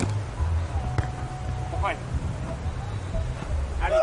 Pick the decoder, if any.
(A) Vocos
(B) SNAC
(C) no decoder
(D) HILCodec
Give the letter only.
C